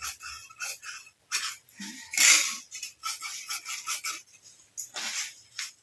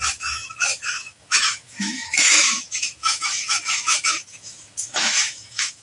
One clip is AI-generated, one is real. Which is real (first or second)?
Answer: first